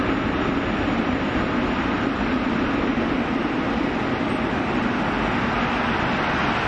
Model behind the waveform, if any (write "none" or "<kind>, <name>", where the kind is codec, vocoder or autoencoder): none